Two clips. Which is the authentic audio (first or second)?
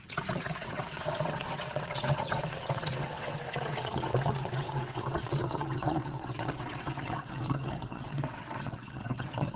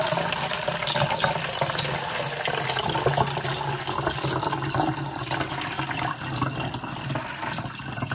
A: second